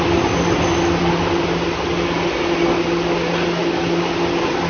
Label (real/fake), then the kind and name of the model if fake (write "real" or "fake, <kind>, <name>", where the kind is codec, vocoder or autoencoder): real